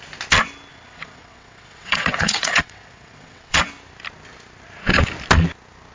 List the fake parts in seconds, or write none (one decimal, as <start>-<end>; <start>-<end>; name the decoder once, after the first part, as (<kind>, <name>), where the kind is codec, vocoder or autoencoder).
0.7-3.6 (vocoder, WaveNeXt)